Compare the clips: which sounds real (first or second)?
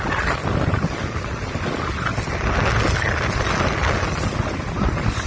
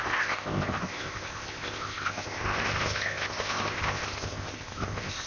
first